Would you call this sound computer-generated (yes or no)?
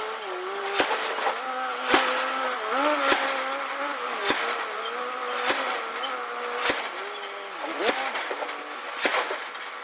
no